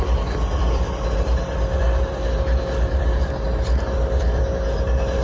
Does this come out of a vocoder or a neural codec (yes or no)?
no